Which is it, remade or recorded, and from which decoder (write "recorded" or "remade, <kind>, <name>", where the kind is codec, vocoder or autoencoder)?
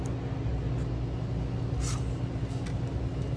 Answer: recorded